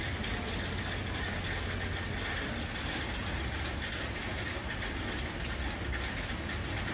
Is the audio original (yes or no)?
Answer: yes